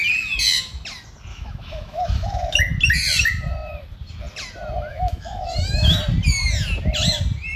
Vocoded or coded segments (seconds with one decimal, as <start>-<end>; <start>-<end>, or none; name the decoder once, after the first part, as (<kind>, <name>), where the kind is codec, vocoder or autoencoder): 1.3-2.6 (autoencoder, DAC-VAE); 4.9-6.0